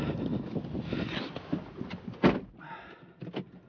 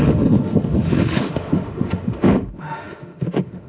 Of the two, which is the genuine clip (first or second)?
first